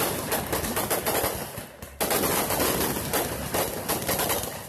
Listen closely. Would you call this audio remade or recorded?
recorded